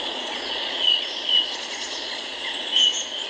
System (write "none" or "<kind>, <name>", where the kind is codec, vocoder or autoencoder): vocoder, Vocos